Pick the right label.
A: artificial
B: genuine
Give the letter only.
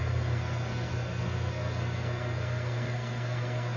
A